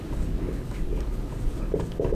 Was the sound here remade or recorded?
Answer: remade